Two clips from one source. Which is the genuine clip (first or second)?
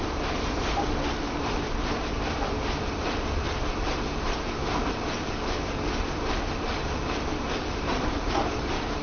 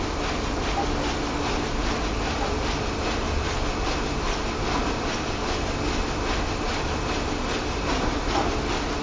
second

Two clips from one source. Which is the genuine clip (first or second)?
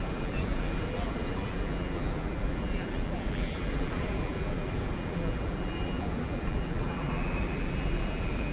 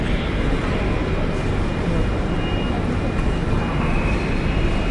second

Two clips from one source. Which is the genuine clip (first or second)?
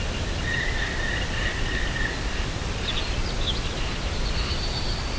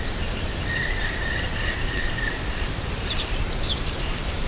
first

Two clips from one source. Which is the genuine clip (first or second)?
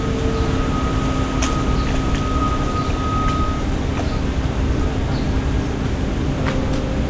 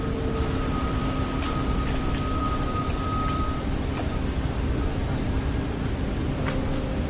first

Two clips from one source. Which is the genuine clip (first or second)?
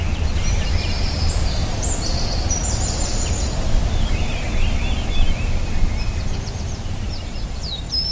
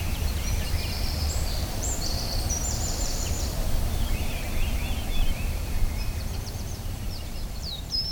first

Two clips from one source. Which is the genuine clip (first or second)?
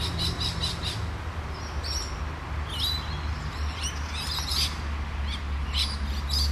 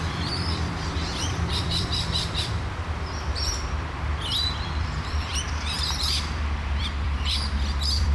first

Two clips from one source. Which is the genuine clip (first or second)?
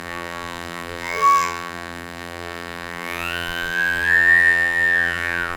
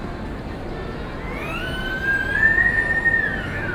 second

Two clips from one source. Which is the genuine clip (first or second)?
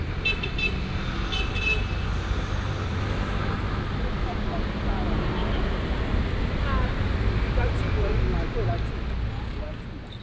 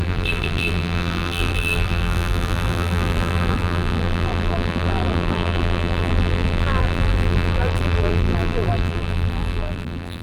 first